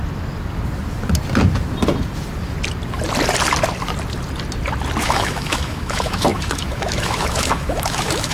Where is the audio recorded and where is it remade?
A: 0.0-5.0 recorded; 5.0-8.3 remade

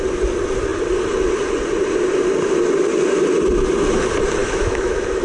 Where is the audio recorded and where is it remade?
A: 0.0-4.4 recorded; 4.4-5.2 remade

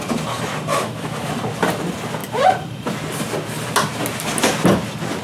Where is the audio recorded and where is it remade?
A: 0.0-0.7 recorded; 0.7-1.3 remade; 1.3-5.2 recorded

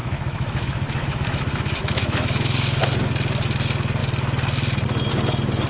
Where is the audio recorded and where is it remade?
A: 0.0-2.8 remade; 2.8-5.7 recorded

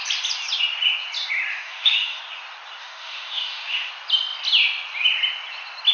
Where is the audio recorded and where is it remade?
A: 0.0-1.5 recorded; 1.5-2.2 remade; 2.2-2.8 recorded; 2.8-3.9 remade; 3.9-5.9 recorded

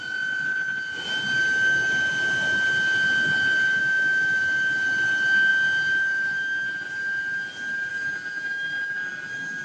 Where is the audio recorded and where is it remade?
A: 0.0-3.8 recorded; 3.8-4.4 remade; 4.4-7.9 recorded; 7.9-9.6 remade

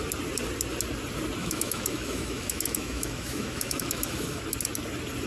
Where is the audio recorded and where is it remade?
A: 0.0-1.4 recorded; 1.4-4.4 remade; 4.4-5.3 recorded

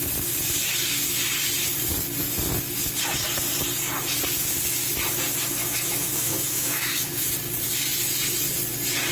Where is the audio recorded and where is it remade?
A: 0.0-5.6 recorded; 5.6-7.3 remade; 7.3-9.1 recorded